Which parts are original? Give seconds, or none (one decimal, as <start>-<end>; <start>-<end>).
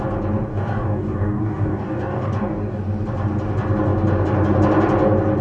0.0-0.5; 2.8-5.4